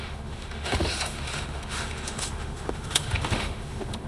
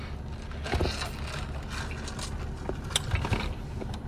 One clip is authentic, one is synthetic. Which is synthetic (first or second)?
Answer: first